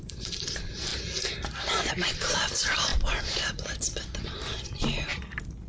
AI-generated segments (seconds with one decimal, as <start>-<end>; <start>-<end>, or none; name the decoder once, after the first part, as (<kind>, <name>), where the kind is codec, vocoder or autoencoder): 0.0-0.9 (vocoder, BigVGAN v2); 1.9-2.9